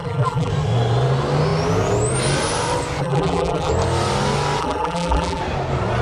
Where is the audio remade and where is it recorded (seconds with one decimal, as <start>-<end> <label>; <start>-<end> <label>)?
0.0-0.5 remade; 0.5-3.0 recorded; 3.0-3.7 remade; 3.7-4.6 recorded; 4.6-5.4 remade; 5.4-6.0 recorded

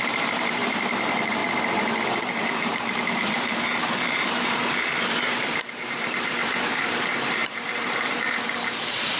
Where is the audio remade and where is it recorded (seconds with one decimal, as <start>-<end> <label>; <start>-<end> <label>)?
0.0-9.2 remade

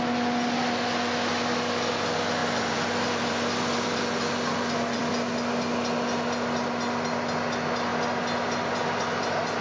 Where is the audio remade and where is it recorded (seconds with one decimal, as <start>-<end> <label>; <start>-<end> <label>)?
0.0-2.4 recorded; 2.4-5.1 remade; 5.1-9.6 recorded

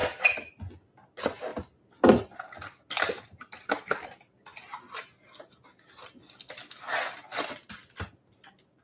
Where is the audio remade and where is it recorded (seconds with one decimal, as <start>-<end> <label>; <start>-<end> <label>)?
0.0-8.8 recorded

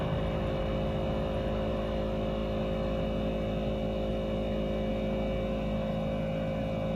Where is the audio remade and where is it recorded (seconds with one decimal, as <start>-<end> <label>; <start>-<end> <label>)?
0.0-7.0 recorded